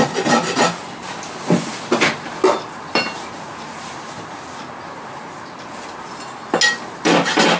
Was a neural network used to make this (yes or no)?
no